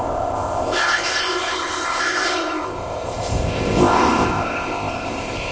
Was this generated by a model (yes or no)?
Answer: yes